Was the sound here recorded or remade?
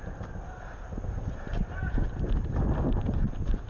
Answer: recorded